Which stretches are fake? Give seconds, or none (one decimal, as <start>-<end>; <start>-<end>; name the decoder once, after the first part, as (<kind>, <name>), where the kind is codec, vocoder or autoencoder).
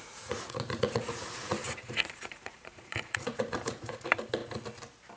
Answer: 0.0-4.4 (vocoder, Vocos)